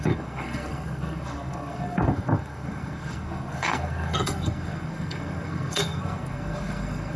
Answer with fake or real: fake